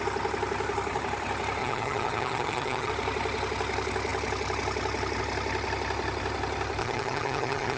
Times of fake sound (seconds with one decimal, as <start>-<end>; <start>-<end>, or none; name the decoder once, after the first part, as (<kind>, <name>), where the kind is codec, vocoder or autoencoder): 1.6-2.9 (vocoder, HiFi-GAN); 6.8-7.8